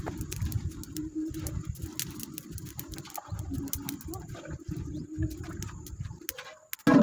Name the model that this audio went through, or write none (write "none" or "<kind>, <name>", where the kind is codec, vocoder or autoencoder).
none